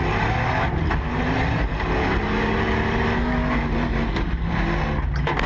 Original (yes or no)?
yes